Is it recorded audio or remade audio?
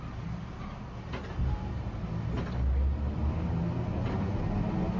recorded